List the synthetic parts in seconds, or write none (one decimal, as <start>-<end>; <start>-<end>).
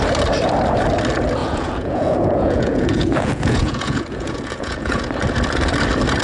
1.4-5.1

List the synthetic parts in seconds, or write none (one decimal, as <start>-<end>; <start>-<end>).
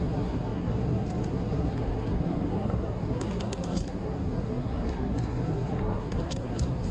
0.0-6.9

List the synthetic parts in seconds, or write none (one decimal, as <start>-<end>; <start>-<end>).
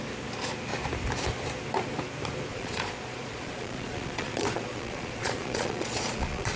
2.5-6.6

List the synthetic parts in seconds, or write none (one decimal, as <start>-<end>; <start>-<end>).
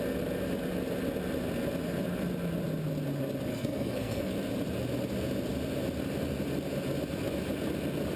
3.5-4.3